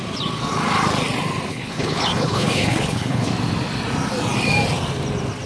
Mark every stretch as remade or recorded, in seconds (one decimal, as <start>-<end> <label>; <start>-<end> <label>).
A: 0.0-1.5 recorded; 1.5-3.3 remade; 3.3-5.5 recorded